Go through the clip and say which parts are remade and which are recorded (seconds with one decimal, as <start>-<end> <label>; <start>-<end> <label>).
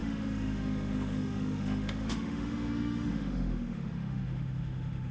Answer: 0.0-5.1 remade